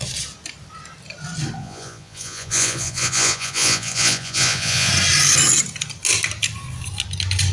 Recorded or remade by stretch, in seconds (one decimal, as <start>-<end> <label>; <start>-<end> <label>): 0.0-1.6 recorded; 1.6-4.9 remade; 4.9-7.5 recorded